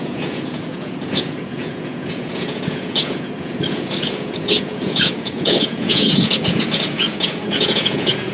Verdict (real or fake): fake